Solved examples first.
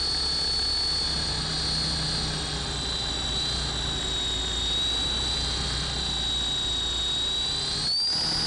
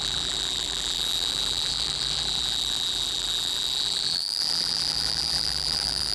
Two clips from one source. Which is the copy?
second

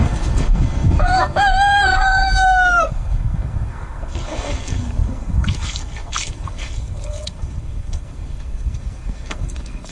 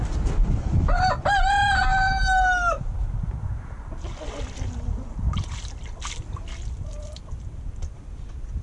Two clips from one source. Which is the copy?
first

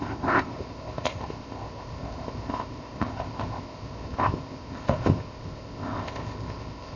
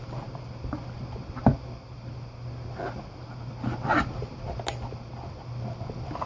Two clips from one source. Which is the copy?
first